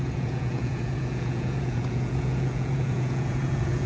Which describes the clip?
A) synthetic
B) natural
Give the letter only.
A